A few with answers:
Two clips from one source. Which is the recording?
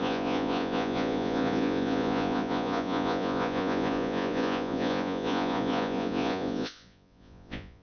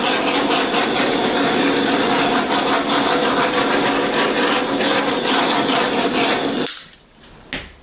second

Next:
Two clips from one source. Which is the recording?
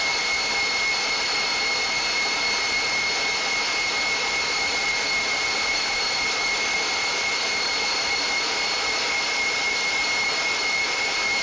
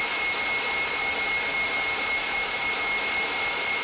second